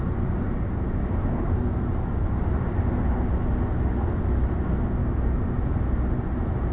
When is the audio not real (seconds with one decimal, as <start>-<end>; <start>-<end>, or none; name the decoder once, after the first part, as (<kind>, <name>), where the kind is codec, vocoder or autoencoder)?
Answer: none